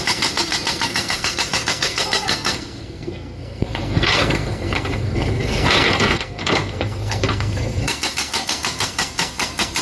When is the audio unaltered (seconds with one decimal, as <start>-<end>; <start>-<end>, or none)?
none